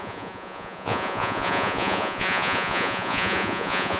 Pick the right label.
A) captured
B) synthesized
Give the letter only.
B